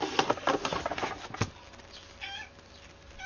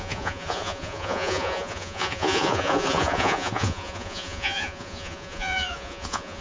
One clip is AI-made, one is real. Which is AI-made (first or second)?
second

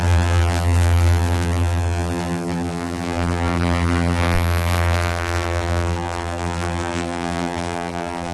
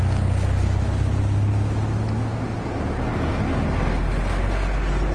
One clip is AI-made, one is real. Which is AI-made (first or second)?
first